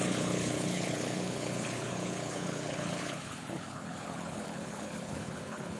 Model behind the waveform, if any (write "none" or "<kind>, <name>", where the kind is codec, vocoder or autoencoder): codec, HILCodec